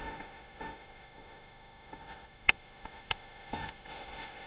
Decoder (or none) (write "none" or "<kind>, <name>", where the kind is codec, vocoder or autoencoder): autoencoder, DAC-VAE